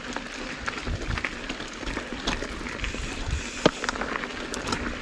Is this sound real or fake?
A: real